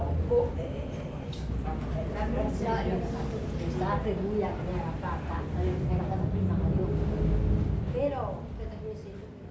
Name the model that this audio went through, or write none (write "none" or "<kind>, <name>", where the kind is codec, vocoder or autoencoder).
none